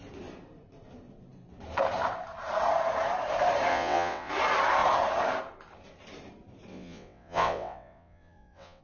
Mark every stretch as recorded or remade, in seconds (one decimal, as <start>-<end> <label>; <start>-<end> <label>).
0.0-3.7 recorded; 3.7-4.3 remade; 4.3-6.7 recorded; 6.7-8.8 remade